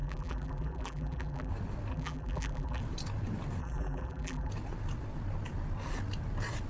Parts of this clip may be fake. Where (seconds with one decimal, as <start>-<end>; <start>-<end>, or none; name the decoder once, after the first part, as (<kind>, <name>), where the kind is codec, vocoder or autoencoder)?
0.0-1.5 (vocoder, BigVGAN v2); 1.9-2.8; 3.6-4.5